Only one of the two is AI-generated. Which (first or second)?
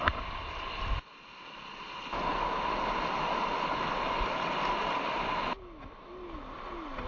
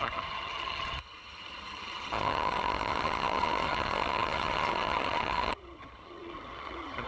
second